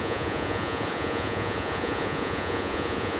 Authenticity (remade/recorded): remade